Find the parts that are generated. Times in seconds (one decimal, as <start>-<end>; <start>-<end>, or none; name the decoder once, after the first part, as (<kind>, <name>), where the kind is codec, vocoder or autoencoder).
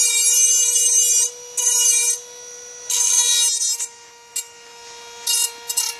none